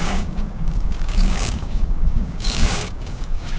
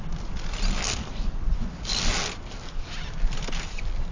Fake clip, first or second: first